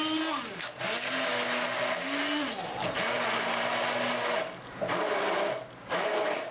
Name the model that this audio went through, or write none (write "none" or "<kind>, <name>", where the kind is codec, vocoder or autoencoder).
none